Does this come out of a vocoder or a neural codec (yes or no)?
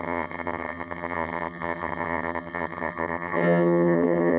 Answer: yes